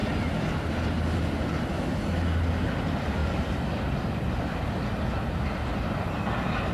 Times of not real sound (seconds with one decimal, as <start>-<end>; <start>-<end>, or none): none